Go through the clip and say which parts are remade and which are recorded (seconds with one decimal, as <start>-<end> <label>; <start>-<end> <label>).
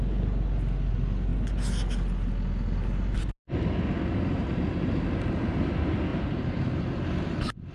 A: 0.0-6.1 recorded; 6.1-6.8 remade; 6.8-7.7 recorded